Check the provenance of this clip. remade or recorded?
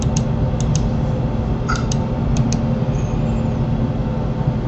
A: recorded